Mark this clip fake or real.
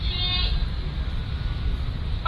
real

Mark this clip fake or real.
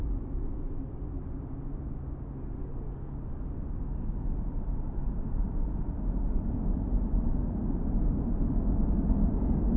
real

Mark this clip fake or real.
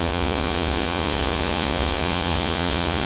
fake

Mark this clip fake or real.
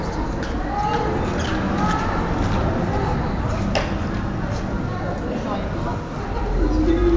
real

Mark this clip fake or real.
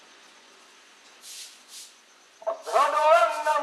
fake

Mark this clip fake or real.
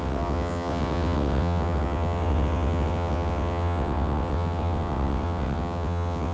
fake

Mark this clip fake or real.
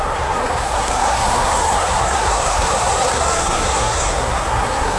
fake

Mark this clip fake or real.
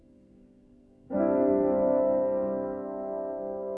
fake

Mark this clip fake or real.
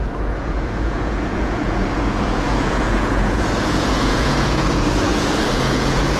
fake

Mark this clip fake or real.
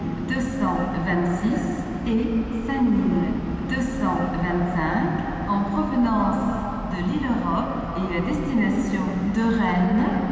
real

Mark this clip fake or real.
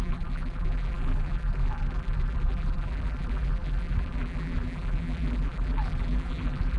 fake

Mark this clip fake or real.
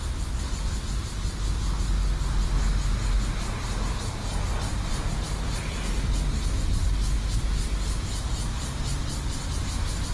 real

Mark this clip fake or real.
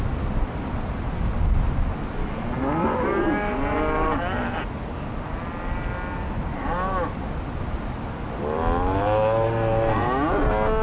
real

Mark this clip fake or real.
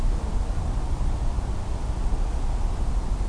real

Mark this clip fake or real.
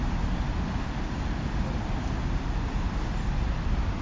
real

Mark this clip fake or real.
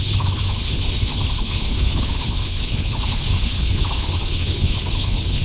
fake